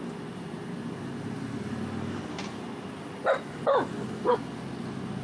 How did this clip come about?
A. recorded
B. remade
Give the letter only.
A